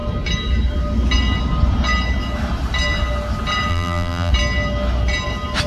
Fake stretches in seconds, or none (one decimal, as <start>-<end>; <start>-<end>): 3.7-4.3